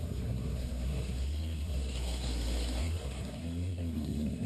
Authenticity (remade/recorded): remade